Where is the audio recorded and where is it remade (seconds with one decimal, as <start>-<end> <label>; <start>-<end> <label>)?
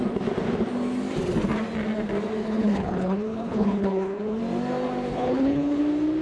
0.0-2.4 recorded; 2.4-4.4 remade; 4.4-5.1 recorded; 5.1-5.8 remade; 5.8-6.2 recorded